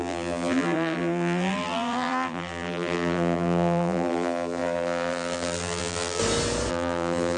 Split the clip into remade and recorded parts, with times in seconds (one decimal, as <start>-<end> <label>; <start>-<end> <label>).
0.0-6.2 remade; 6.2-6.7 recorded; 6.7-7.4 remade